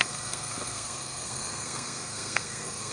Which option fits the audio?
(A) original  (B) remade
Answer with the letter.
B